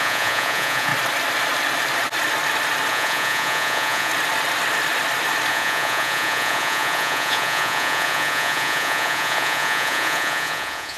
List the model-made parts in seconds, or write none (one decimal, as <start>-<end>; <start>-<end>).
0.0-0.9; 2.9-4.1; 5.5-11.0